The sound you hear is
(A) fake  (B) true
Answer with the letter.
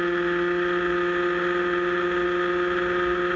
B